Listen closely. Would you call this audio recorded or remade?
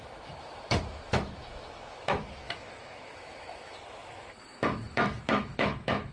remade